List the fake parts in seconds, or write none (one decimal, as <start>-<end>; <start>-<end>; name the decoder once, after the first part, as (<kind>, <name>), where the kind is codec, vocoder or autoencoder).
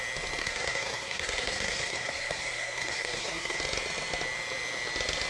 0.4-3.6 (codec, SNAC)